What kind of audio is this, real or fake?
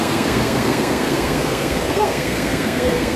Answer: fake